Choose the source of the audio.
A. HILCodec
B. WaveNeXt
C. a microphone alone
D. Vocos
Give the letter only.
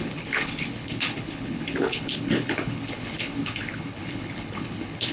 A